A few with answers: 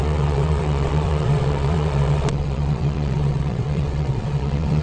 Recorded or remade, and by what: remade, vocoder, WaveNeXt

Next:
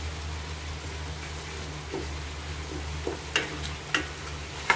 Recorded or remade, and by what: recorded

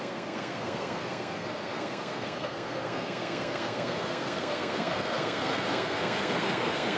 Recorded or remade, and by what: remade, codec, SNAC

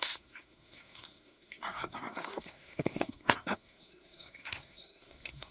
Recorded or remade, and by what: remade, codec, SNAC